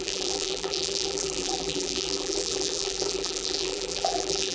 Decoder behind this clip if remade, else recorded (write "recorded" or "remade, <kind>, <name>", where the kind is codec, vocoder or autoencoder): remade, vocoder, BigVGAN v2